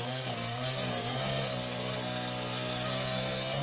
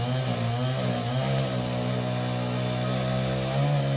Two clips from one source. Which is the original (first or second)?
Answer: second